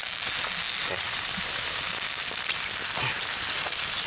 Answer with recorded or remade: recorded